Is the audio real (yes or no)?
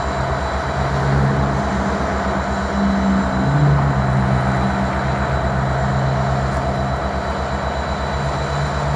yes